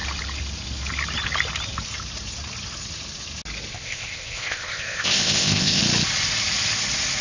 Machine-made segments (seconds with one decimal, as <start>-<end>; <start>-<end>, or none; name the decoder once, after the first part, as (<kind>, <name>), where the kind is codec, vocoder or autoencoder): 3.7-5.8 (codec, ZipCodec)

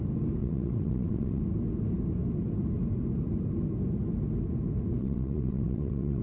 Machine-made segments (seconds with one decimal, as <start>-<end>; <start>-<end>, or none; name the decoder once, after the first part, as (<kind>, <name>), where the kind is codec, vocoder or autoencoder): 0.4-1.4 (vocoder, WaveNeXt); 5.0-6.2

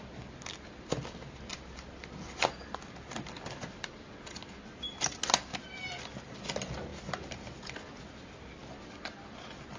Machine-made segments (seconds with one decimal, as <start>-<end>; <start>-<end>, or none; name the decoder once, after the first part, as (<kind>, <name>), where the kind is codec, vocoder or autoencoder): 6.9-7.6 (vocoder, BigVGAN v2)

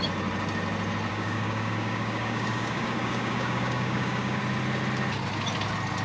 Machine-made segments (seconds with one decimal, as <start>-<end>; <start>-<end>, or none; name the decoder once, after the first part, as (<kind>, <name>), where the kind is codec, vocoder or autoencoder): 1.1-4.4 (codec, DAC)